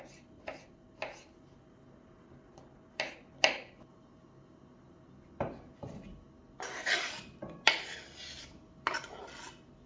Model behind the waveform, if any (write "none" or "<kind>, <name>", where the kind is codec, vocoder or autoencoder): none